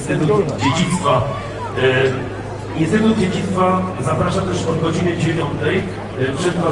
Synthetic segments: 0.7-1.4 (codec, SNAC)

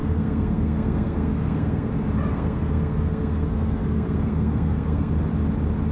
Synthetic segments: 0.0-1.9 (codec, SNAC); 2.3-5.1

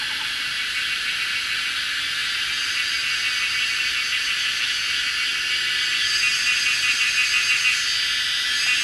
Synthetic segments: none